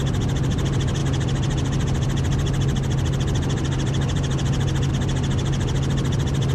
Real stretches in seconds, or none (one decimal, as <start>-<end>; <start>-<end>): 0.0-6.5